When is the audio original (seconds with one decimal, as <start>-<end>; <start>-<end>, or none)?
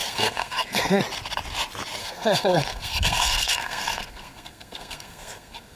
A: 1.0-2.0